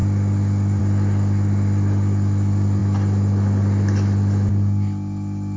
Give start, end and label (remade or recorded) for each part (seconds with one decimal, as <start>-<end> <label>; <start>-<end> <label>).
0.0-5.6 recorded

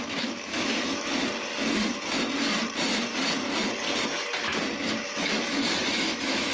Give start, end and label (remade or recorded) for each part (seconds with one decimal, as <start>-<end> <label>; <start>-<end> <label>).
0.0-1.2 remade; 1.2-5.1 recorded; 5.1-6.5 remade

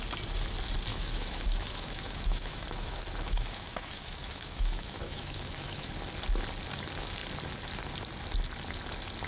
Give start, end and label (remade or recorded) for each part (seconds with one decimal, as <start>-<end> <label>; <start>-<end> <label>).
0.0-0.9 recorded; 0.9-5.9 remade; 5.9-9.3 recorded

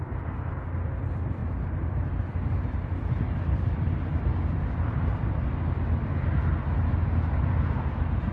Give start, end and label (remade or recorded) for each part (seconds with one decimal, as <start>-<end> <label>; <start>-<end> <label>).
0.0-8.3 recorded

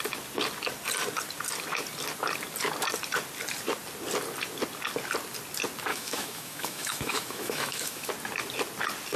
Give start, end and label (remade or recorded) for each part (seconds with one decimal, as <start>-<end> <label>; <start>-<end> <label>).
0.0-5.9 recorded; 5.9-8.1 remade; 8.1-9.2 recorded